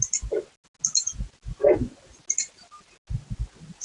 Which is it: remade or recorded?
recorded